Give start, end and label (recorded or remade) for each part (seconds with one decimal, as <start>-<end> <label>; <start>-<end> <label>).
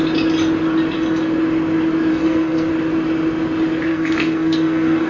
0.0-2.1 recorded; 2.1-2.7 remade; 2.7-3.9 recorded; 3.9-5.1 remade